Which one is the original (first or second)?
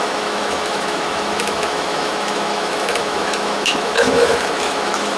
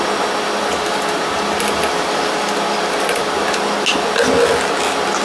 second